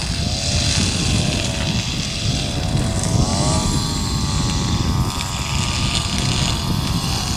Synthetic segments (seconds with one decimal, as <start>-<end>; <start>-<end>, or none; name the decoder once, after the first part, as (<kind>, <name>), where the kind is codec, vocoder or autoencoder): 3.3-3.8 (vocoder, BigVGAN v2)